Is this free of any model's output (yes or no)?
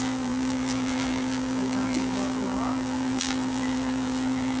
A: no